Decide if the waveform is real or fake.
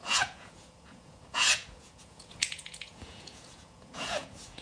fake